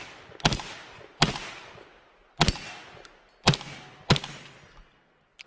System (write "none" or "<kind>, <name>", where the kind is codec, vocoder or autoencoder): none